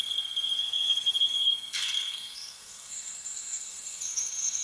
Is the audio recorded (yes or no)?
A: no